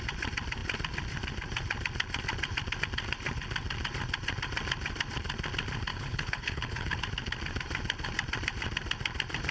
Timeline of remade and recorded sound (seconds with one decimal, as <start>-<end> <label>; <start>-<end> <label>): 0.0-5.9 recorded; 5.9-7.0 remade; 7.0-9.5 recorded